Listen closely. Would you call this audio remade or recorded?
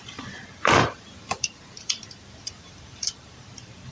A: remade